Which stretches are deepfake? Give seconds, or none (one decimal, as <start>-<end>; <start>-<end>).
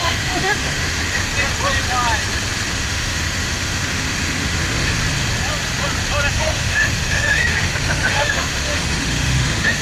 0.0-1.3; 2.7-5.0; 6.3-9.8